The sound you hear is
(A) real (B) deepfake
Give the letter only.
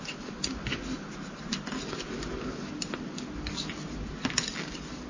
A